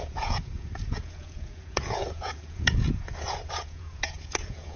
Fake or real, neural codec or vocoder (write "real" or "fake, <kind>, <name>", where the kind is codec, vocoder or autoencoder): fake, vocoder, Vocos